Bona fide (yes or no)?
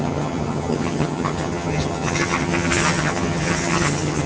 no